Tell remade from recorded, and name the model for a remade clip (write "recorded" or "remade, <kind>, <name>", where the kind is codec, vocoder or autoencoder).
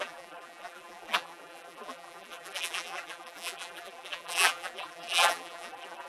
remade, vocoder, BigVGAN v2